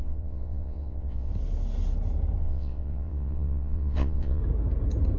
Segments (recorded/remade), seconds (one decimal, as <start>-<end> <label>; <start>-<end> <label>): 0.0-1.3 remade; 1.3-2.4 recorded; 2.4-4.4 remade; 4.4-5.2 recorded